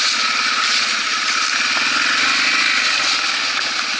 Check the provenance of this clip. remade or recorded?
recorded